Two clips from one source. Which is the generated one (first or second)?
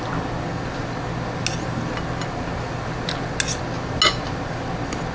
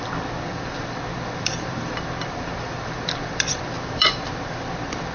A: second